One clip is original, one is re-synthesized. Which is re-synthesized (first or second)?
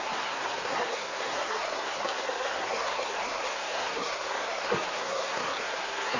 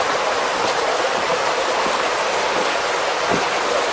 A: first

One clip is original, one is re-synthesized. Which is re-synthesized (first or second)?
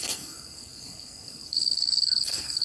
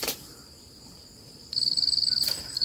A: first